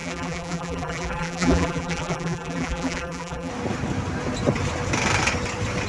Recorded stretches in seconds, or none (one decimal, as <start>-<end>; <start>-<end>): 3.5-5.9